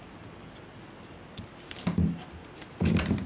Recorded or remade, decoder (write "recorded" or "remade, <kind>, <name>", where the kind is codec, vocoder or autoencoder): remade, vocoder, BigVGAN v2